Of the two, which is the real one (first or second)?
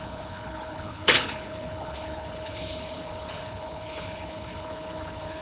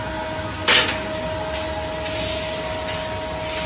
second